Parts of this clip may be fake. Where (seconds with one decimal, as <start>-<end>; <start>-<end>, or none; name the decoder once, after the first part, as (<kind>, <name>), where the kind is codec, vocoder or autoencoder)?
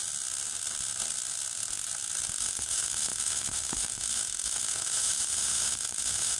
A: 2.2-6.4 (autoencoder, DAC-VAE)